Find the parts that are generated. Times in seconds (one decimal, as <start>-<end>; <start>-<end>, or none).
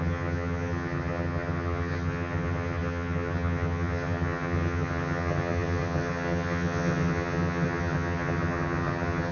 0.0-9.3